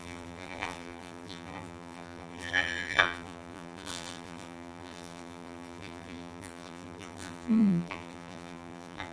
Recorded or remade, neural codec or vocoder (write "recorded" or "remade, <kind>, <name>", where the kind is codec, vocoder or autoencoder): remade, vocoder, BigVGAN v2